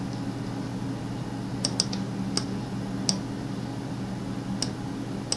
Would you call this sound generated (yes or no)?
no